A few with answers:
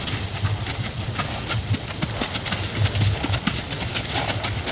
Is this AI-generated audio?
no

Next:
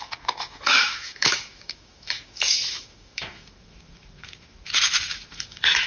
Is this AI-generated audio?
yes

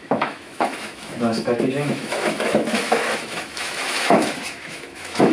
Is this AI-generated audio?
yes